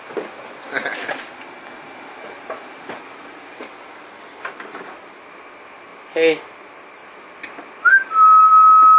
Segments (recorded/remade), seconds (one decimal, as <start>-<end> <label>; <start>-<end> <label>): 0.0-9.0 recorded